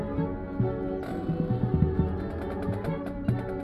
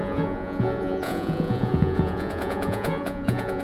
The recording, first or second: first